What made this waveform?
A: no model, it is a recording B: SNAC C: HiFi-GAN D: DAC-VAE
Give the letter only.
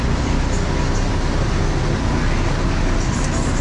A